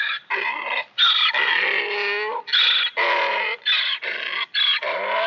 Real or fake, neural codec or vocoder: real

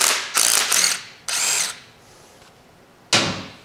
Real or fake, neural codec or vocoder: real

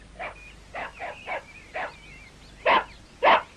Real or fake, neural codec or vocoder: real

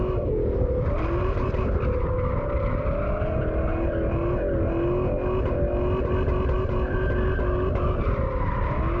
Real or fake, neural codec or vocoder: real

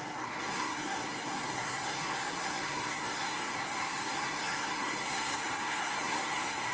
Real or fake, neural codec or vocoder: fake, codec, SNAC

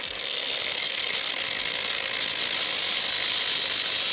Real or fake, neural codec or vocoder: real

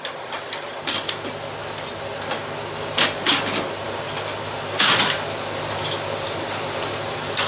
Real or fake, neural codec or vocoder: real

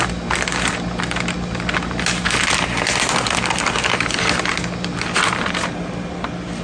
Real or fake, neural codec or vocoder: real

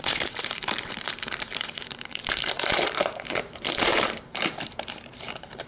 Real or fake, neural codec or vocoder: fake, vocoder, BigVGAN v2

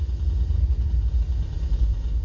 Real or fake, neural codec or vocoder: real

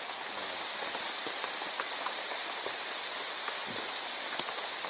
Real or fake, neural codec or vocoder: real